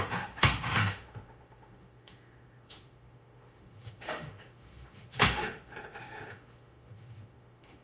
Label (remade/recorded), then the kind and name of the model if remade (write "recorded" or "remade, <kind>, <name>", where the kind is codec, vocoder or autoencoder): remade, autoencoder, DAC-VAE